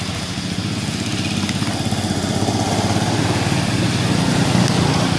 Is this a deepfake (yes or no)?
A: no